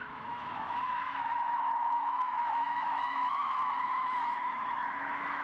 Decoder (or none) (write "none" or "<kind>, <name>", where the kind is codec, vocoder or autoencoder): autoencoder, DAC-VAE